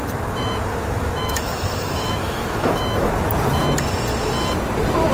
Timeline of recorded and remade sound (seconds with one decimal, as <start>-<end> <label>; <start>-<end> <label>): 0.0-3.1 remade; 3.1-5.1 recorded